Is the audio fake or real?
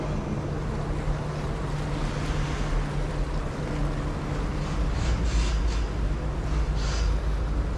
real